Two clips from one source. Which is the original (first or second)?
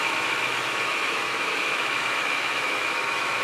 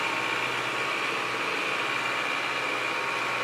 second